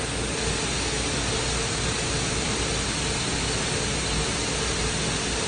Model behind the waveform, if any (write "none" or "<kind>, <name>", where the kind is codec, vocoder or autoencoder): none